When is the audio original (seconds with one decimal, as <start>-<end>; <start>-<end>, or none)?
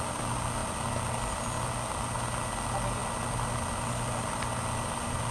0.0-5.3